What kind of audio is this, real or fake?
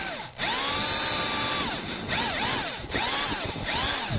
real